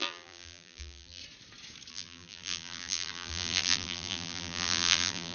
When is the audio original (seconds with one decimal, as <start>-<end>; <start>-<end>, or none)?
1.2-1.9

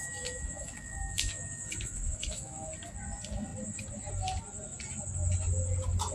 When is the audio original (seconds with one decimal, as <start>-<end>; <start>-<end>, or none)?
2.7-6.1